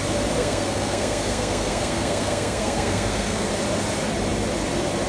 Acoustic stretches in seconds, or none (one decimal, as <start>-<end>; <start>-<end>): 0.0-0.4; 3.5-5.1